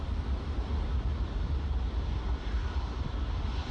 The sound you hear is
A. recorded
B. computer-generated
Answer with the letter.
B